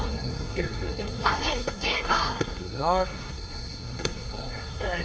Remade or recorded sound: remade